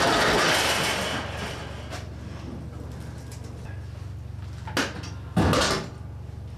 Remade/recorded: recorded